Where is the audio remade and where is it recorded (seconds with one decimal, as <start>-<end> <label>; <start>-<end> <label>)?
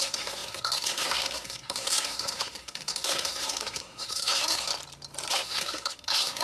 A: 0.0-4.7 remade; 4.7-5.3 recorded; 5.3-6.4 remade